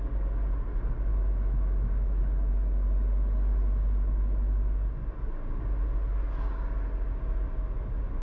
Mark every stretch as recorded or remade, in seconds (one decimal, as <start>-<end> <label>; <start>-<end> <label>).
0.0-1.1 recorded; 1.1-2.2 remade; 2.2-8.2 recorded